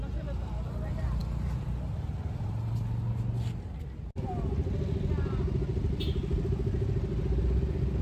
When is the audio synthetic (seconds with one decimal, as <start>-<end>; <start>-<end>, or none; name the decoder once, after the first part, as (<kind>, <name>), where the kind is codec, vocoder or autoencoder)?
none